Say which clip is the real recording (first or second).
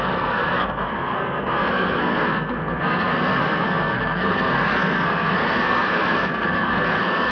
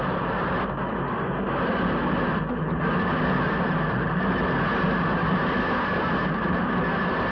second